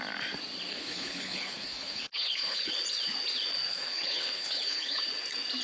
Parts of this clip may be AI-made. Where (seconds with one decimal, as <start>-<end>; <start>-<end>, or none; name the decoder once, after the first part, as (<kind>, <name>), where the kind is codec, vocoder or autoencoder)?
0.7-2.7 (codec, HILCodec); 3.7-5.0